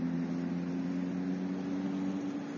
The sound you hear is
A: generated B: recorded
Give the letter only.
B